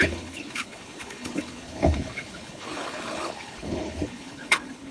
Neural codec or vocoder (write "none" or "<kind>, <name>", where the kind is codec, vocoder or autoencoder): codec, HILCodec